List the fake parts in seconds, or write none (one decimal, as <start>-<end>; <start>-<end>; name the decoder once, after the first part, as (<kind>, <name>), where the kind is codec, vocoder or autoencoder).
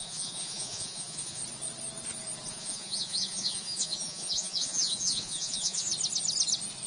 0.0-1.4 (vocoder, Vocos); 2.5-5.9